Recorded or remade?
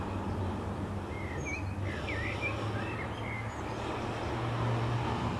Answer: recorded